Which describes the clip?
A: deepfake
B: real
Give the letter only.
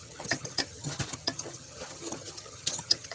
A